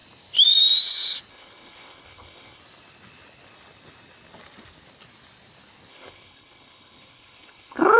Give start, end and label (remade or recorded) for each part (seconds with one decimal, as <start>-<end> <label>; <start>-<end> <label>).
0.0-1.3 recorded; 1.3-2.6 remade; 2.6-5.9 recorded; 5.9-8.0 remade